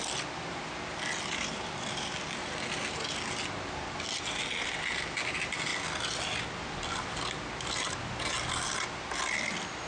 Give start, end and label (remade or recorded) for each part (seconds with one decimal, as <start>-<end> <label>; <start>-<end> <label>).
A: 0.0-9.9 recorded